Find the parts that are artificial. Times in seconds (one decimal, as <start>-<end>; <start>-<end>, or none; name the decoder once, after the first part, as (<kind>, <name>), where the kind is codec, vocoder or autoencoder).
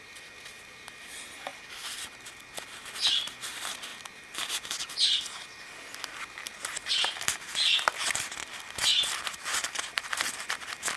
none